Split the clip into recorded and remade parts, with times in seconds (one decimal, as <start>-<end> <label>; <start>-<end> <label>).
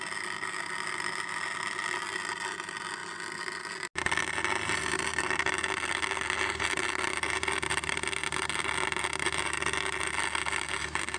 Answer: 0.0-11.2 recorded